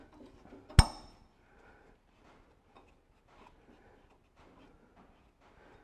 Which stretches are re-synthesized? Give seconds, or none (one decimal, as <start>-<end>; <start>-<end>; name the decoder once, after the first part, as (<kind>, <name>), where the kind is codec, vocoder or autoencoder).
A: none